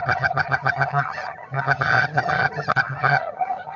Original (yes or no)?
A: no